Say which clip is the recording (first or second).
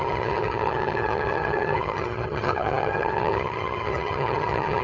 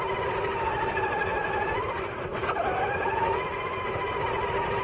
second